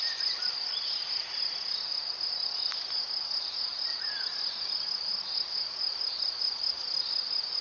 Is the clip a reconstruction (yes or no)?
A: no